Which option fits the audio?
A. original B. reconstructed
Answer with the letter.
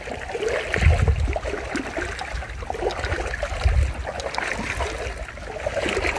A